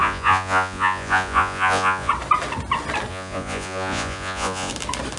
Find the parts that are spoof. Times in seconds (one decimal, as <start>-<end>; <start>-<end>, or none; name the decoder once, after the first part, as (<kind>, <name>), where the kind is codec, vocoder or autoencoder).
0.0-2.1 (vocoder, Vocos); 3.1-4.7